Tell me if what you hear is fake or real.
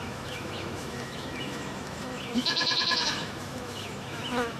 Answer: fake